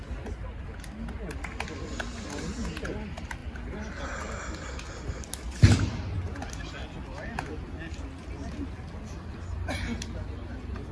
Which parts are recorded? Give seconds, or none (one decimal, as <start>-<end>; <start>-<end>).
0.0-10.9